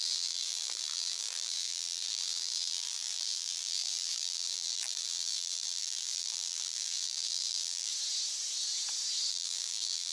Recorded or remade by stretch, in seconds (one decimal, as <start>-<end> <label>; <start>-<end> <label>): 0.0-7.9 remade; 7.9-9.3 recorded; 9.3-10.1 remade